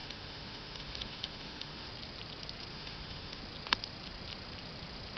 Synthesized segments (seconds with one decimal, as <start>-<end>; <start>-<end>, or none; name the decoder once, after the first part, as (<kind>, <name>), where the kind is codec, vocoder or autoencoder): 0.0-1.9 (autoencoder, DAC-VAE); 2.7-3.4